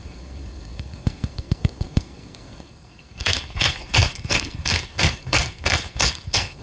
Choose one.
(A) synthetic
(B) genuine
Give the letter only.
A